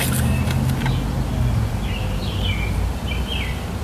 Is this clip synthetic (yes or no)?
no